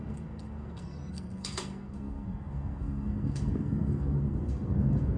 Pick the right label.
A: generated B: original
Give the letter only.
A